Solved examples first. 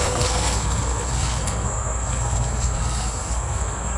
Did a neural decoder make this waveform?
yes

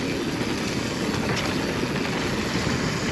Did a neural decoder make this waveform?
no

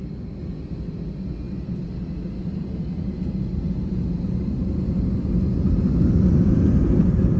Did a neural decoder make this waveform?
no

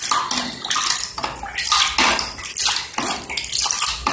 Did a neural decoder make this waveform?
no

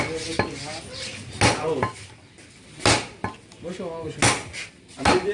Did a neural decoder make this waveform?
no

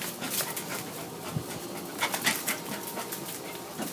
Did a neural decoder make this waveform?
no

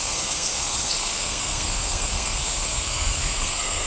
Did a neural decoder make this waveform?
yes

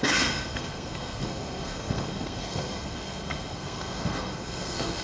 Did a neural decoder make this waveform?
yes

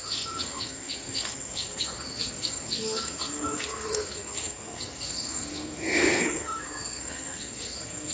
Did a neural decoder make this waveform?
yes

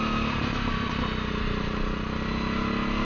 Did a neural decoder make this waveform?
no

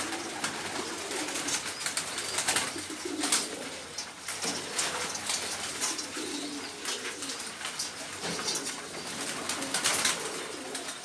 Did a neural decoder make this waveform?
no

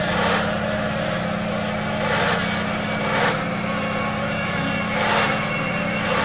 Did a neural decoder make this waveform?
no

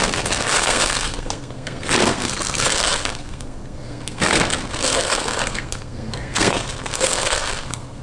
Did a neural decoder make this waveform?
yes